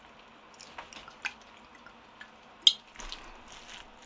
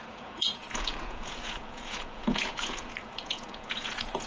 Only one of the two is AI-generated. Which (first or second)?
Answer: second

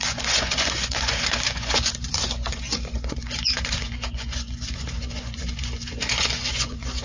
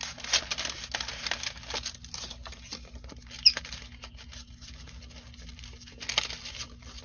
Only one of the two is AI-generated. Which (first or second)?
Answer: first